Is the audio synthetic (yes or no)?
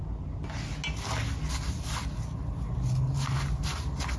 no